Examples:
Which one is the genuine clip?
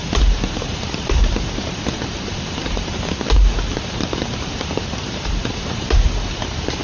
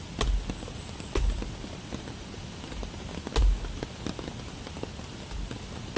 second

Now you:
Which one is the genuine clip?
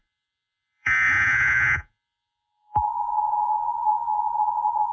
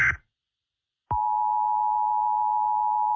second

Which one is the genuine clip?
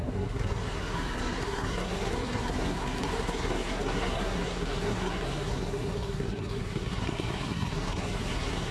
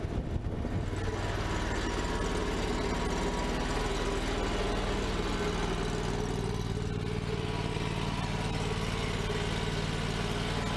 second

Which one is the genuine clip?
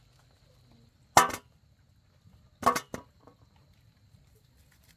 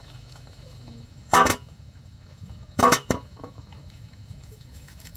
first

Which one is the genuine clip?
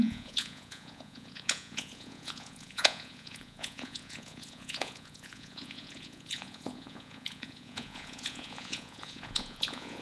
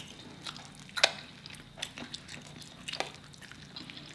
second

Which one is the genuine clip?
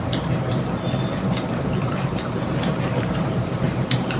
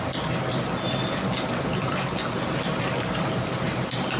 second